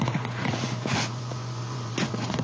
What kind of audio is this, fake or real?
fake